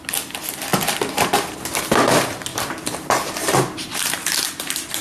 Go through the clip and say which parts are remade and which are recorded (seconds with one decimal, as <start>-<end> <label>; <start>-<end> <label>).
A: 0.0-2.5 recorded; 2.5-5.0 remade